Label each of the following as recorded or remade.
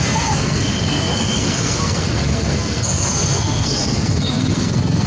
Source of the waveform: remade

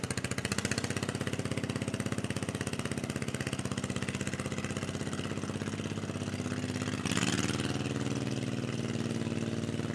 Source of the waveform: recorded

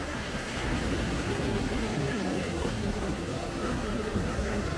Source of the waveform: remade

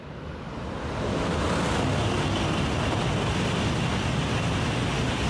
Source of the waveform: recorded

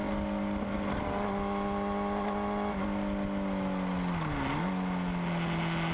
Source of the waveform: recorded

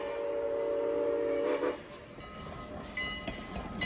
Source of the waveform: recorded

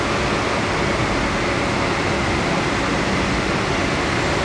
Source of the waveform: recorded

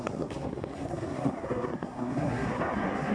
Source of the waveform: remade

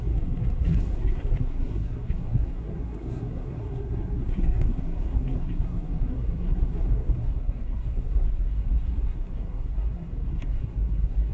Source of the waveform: remade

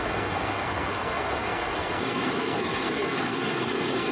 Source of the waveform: remade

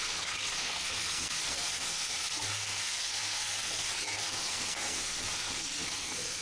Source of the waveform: remade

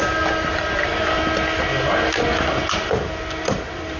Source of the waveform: recorded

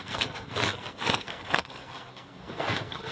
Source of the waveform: remade